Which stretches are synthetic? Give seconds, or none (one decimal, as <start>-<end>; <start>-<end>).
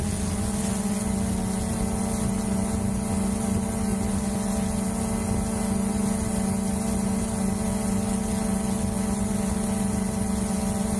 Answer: none